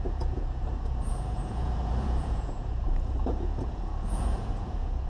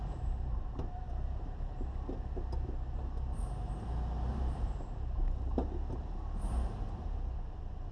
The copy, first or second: first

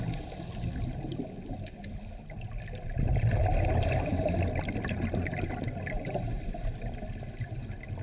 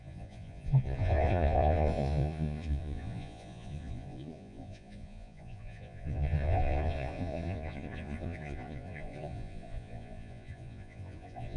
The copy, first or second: second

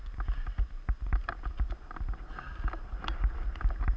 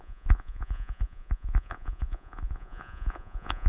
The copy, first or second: second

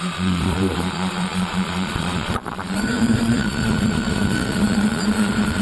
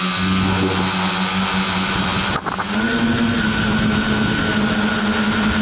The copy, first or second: first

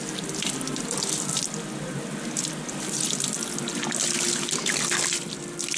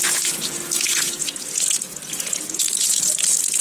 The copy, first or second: second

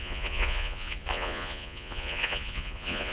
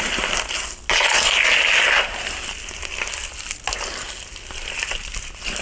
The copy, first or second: first